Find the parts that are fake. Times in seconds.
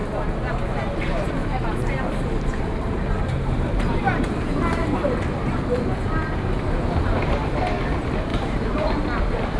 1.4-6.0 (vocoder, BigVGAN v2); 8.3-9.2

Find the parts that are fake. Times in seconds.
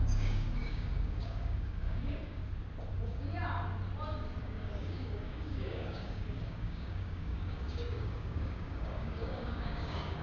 0.0-2.4 (codec, DAC); 2.9-3.3; 4.4-10.2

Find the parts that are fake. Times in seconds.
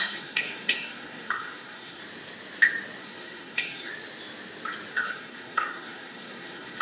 0.0-2.0 (codec, SNAC); 3.0-3.9; 4.9-6.8